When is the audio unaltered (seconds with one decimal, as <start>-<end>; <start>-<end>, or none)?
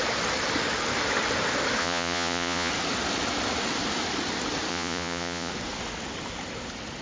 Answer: 0.0-1.8; 2.7-4.7; 5.5-7.0